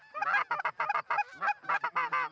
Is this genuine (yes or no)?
yes